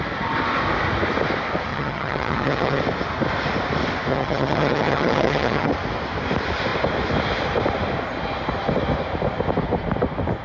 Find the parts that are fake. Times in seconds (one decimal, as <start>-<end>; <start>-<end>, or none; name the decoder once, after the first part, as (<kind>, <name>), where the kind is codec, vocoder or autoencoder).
1.7-2.8 (vocoder, HiFi-GAN); 4.1-5.7